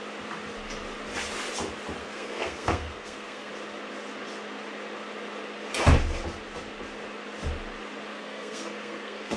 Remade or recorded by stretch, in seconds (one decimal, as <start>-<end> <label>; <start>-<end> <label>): 0.0-2.0 recorded; 2.0-3.5 remade; 3.5-8.1 recorded; 8.1-9.4 remade